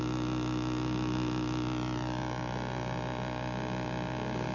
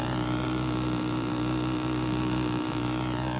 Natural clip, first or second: first